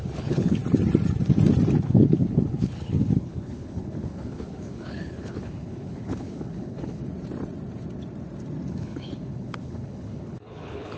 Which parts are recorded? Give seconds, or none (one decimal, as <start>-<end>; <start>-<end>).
0.6-1.8; 7.0-8.7